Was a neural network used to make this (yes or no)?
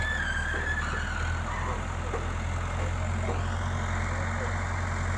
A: no